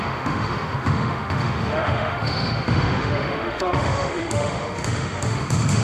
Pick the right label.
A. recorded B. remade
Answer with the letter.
B